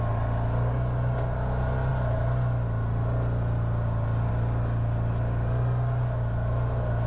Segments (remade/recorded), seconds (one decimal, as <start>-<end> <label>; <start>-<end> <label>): 0.0-7.1 recorded